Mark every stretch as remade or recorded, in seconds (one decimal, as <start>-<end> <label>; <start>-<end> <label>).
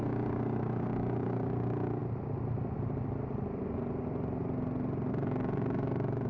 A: 0.0-2.0 remade; 2.0-5.1 recorded; 5.1-6.3 remade